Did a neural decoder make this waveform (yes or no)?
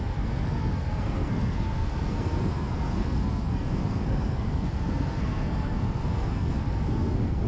yes